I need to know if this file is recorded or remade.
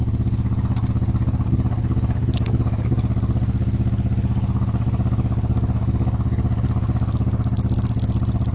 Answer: recorded